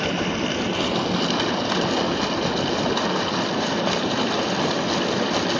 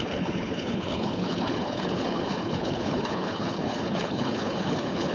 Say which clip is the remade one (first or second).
second